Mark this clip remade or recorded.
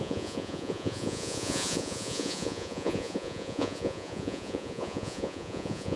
remade